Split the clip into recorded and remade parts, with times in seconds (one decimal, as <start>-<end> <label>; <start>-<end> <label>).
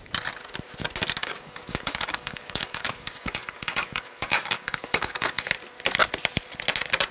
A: 0.0-1.2 recorded; 1.2-5.5 remade; 5.5-7.1 recorded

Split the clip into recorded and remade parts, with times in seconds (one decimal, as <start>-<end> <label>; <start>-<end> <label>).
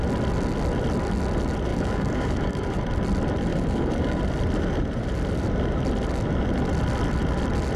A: 0.0-1.7 recorded; 1.7-2.8 remade; 2.8-3.5 recorded; 3.5-4.2 remade; 4.2-7.8 recorded